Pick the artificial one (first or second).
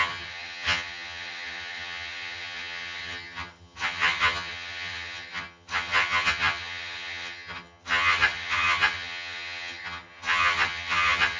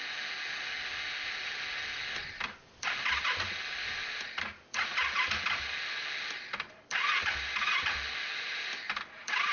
first